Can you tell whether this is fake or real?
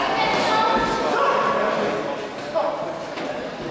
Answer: real